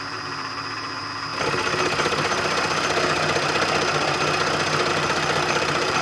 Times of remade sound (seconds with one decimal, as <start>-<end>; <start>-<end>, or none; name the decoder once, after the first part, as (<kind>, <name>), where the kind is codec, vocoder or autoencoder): 0.0-1.3 (vocoder, BigVGAN v2); 4.9-6.0